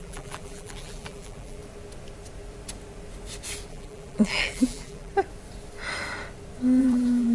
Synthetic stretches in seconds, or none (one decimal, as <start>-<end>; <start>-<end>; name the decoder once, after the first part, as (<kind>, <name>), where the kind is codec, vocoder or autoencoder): 0.0-1.6 (vocoder, BigVGAN v2); 3.7-5.1; 6.8-7.3